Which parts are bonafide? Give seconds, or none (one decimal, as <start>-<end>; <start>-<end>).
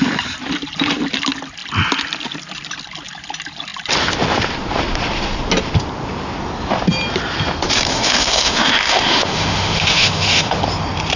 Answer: 0.0-7.9; 10.6-11.2